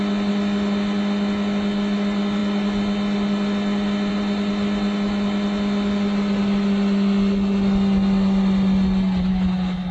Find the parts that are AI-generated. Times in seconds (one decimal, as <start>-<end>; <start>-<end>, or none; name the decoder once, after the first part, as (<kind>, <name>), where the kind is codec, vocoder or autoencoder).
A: none